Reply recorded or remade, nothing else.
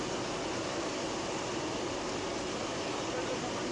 recorded